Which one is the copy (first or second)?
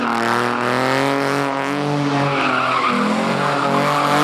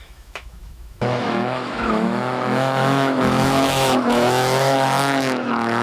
second